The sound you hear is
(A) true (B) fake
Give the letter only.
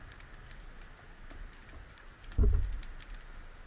A